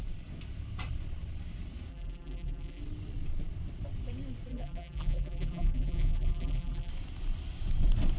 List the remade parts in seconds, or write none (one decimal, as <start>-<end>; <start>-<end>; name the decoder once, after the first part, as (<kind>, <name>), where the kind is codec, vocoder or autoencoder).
1.9-2.8 (vocoder, BigVGAN v2); 4.5-6.9